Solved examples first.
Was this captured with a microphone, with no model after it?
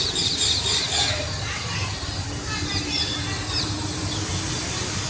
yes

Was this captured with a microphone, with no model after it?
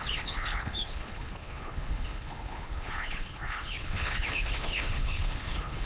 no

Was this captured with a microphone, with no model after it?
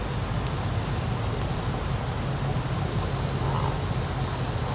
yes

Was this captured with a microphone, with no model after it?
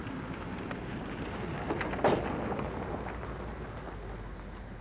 yes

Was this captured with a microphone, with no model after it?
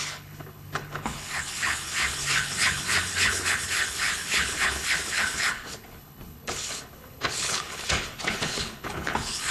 no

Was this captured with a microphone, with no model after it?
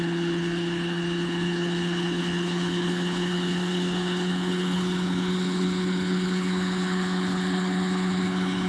no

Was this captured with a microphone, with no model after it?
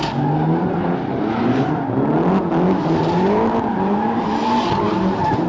yes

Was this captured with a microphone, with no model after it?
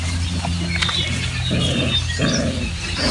yes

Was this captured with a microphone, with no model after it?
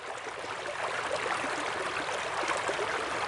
yes